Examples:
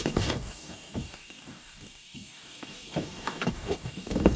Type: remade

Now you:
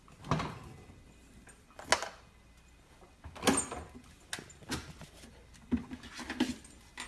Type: recorded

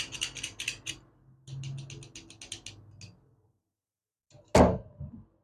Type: recorded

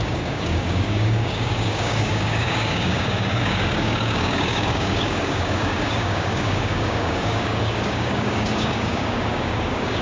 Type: remade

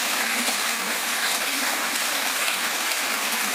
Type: remade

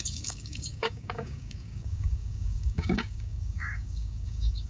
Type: remade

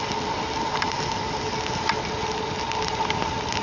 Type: recorded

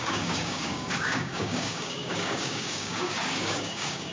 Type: remade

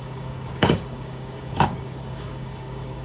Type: remade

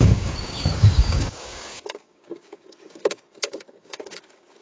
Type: remade